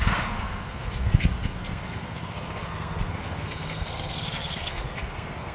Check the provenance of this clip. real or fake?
fake